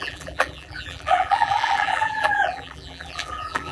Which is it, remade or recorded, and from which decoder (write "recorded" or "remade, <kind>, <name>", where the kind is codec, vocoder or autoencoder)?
remade, vocoder, BigVGAN v2